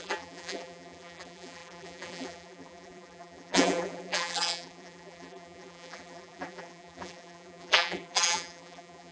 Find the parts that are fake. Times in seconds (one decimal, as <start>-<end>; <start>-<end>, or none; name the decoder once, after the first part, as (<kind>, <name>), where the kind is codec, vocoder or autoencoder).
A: 0.0-9.1 (vocoder, BigVGAN v2)

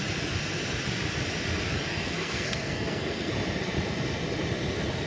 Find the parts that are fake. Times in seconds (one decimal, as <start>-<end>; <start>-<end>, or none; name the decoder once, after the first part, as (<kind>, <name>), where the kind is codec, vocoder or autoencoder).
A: 1.9-3.3 (codec, SNAC)

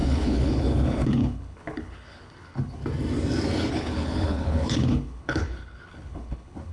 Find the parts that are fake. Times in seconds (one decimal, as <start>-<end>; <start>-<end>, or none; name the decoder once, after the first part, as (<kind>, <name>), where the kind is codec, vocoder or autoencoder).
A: 0.0-2.8 (codec, HILCodec); 3.7-6.7